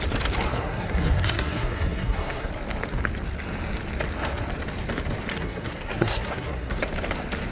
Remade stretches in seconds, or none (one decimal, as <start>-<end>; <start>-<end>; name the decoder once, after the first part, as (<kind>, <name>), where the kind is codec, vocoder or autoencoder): 0.5-2.5 (codec, SNAC); 5.3-6.8